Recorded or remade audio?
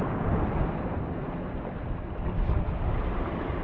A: recorded